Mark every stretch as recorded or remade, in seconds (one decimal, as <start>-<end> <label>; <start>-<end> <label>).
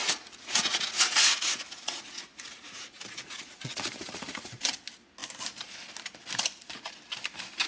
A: 0.0-4.6 remade; 4.6-7.7 recorded